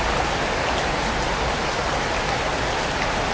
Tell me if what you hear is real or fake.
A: real